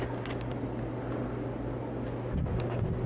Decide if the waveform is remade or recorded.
recorded